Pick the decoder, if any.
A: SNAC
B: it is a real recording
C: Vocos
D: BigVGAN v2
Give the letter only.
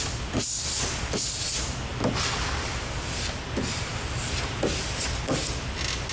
B